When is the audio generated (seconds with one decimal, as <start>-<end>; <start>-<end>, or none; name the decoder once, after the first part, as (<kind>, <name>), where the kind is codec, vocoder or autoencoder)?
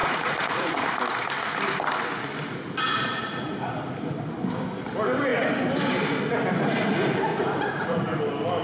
0.0-0.8 (vocoder, Vocos); 2.9-3.7; 7.3-8.0